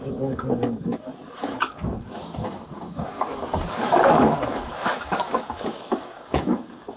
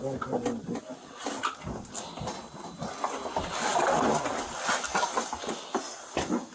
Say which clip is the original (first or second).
second